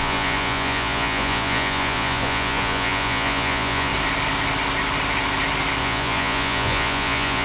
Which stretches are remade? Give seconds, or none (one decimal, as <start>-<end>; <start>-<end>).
0.0-3.9; 5.8-7.4

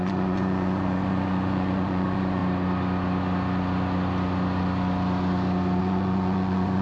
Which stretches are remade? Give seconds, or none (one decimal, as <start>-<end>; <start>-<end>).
0.0-2.4; 5.8-6.8

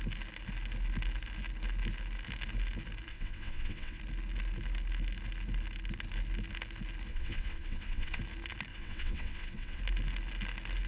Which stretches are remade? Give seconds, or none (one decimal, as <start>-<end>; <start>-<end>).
3.1-4.0; 7.1-8.2; 8.7-9.8

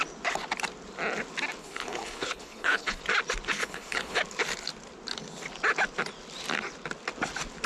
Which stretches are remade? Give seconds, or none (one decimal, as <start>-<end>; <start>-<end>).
1.6-3.0; 3.6-4.2

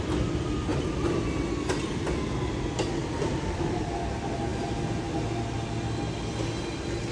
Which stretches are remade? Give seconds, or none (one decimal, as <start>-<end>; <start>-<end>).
none

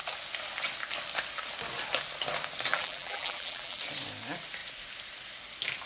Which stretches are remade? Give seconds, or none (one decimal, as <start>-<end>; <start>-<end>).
2.7-3.8